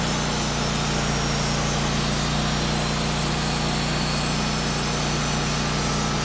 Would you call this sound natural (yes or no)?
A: yes